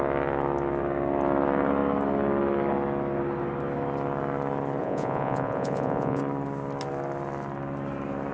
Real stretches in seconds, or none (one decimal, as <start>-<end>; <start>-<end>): 0.0-4.8; 6.2-8.3